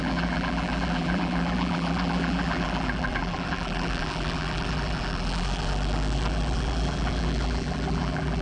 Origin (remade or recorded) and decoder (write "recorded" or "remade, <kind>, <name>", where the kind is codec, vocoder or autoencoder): remade, vocoder, BigVGAN v2